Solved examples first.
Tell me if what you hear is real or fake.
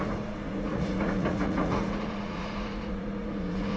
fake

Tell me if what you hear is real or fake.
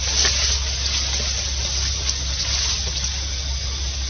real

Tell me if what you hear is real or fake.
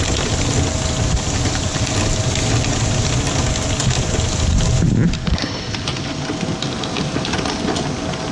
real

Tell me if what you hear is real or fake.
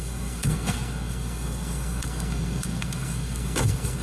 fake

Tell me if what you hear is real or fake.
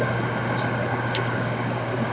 fake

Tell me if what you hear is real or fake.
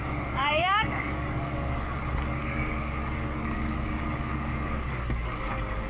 fake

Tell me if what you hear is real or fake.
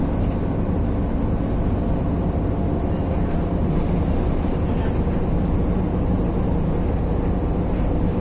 real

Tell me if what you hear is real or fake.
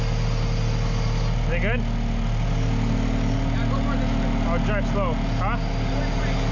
real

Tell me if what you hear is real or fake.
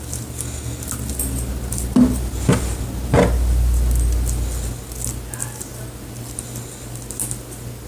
real